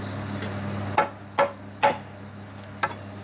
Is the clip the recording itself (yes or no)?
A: yes